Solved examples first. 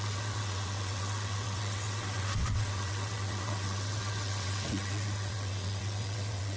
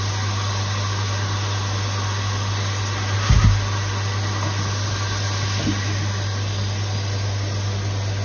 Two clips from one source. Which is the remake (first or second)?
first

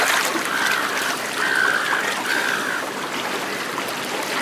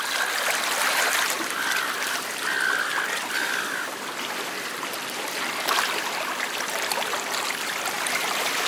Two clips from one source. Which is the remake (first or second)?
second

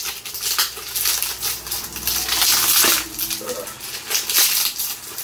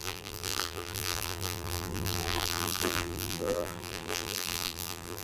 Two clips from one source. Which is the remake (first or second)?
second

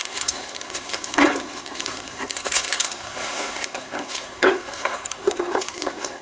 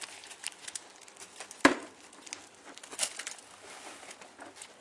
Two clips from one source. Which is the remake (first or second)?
first